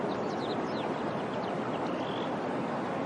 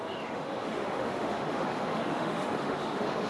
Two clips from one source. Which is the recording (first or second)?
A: first